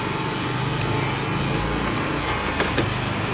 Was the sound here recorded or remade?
recorded